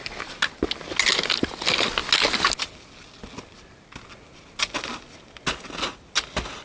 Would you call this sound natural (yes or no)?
yes